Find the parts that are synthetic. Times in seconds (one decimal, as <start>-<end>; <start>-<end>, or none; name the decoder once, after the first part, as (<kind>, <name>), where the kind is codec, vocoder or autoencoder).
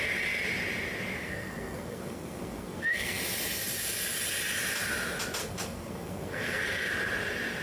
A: 1.2-3.2 (codec, SNAC); 5.4-6.9